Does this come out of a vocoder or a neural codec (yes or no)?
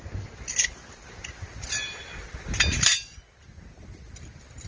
no